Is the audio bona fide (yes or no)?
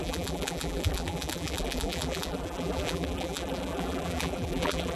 no